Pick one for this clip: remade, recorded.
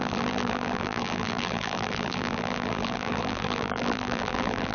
remade